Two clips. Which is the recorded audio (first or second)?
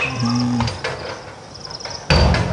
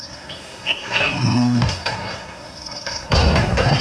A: first